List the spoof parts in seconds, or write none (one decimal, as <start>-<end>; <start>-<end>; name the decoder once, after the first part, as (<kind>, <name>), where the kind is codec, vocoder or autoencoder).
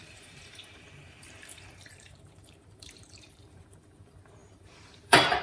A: 0.0-5.4 (vocoder, BigVGAN v2)